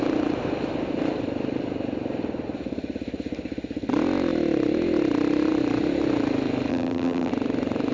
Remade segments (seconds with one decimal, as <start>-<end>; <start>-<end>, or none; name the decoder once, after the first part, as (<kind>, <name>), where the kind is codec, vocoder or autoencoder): 6.7-7.3 (vocoder, BigVGAN v2)